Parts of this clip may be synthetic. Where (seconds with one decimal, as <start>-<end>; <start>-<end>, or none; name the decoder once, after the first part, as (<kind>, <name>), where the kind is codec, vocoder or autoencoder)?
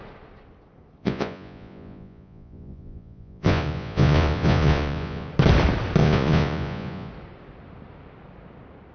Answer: 1.0-5.3 (vocoder, Vocos); 6.0-7.1